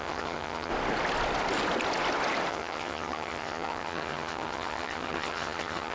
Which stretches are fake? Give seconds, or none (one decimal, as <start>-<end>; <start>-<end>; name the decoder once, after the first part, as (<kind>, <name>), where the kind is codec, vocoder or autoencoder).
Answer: 0.0-0.7 (vocoder, HiFi-GAN); 2.5-5.9